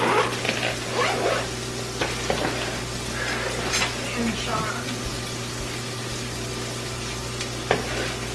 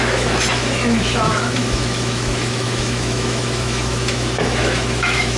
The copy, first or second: second